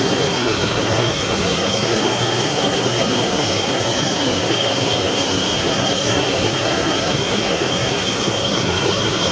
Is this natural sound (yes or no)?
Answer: no